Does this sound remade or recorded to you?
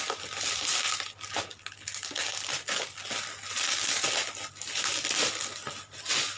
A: recorded